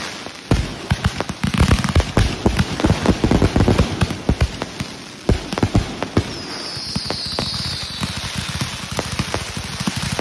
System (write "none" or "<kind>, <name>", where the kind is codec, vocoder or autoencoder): none